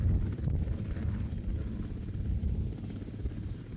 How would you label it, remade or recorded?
remade